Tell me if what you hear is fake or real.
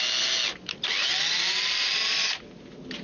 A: real